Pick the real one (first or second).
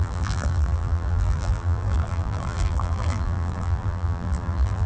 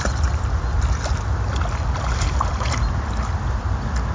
second